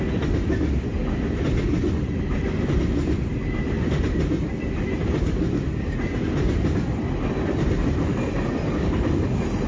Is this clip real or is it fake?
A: real